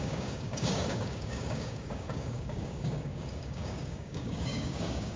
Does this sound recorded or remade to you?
remade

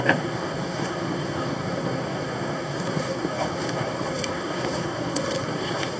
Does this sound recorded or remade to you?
remade